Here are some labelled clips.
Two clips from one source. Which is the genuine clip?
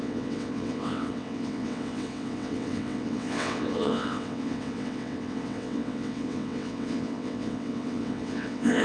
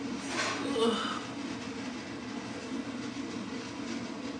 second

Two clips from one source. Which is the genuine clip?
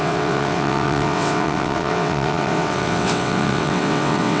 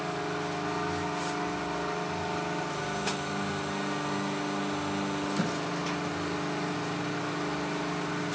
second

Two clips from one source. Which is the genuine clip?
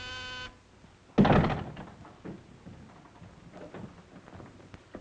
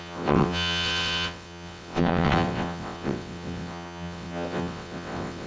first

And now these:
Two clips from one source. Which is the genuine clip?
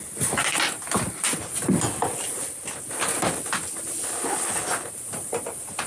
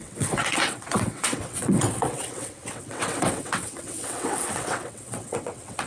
first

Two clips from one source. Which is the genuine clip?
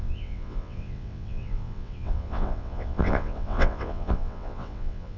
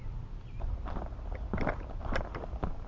second